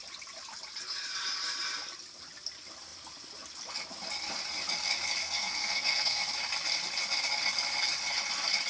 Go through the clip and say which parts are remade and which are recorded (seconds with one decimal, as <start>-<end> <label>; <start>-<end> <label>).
0.0-5.2 recorded; 5.2-6.3 remade; 6.3-8.7 recorded